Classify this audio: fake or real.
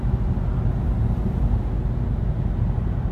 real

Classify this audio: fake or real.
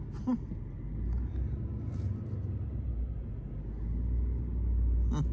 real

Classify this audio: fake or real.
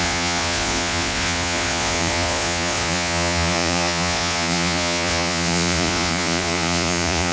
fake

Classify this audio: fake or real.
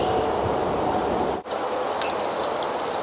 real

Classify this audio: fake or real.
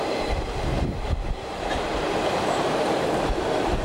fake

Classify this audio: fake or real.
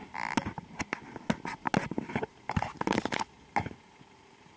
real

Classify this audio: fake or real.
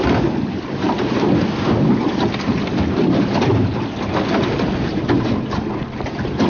real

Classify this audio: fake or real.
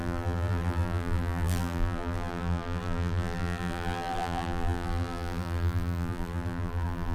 fake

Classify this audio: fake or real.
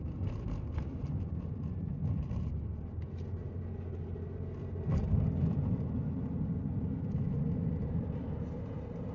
real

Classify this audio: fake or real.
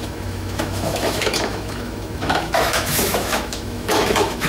fake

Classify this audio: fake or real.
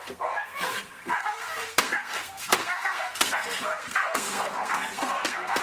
fake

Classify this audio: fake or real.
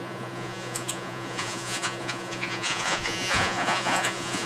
fake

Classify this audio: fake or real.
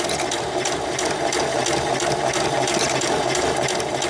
real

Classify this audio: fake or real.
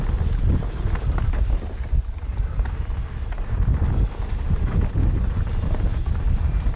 real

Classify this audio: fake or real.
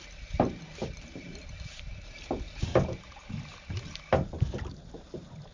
real